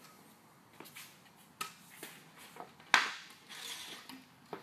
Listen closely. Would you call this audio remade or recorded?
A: recorded